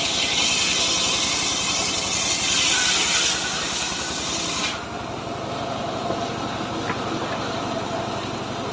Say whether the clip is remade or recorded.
recorded